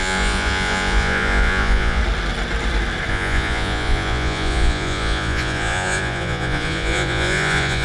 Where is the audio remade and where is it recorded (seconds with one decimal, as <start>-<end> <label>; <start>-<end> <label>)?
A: 0.0-2.0 remade; 2.0-3.1 recorded; 3.1-7.8 remade